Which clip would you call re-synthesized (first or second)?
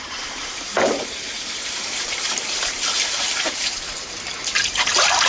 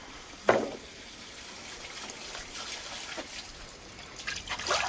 first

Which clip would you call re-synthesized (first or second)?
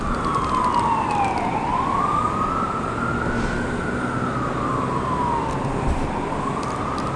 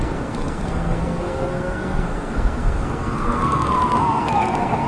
second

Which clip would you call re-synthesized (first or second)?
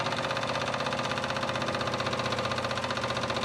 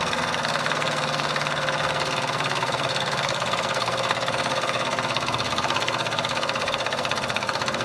second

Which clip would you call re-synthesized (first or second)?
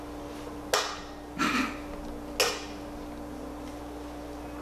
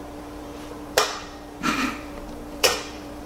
second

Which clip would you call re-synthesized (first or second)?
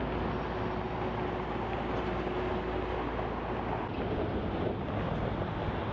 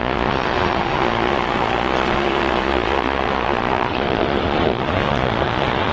second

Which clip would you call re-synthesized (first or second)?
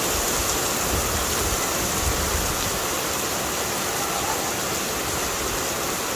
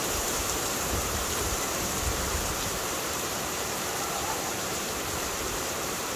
second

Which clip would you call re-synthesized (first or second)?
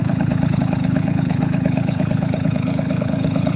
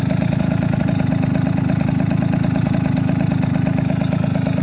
first